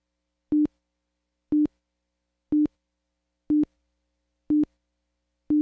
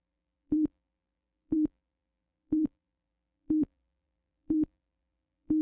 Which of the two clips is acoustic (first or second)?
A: first